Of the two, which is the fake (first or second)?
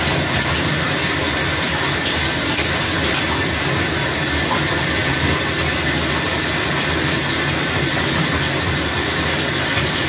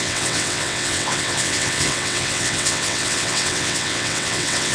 second